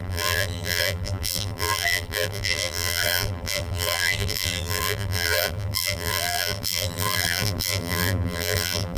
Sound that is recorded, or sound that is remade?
remade